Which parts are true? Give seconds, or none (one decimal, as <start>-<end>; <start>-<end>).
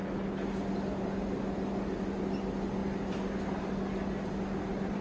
0.0-5.0